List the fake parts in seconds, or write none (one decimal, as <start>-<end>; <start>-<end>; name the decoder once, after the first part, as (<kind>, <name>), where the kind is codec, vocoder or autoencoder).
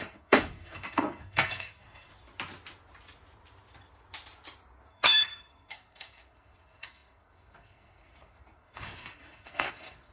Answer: 0.0-2.1 (codec, SNAC); 4.9-10.1